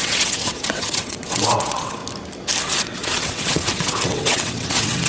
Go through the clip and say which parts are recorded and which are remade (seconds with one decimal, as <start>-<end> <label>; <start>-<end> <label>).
0.0-2.0 remade; 2.0-2.6 recorded; 2.6-5.1 remade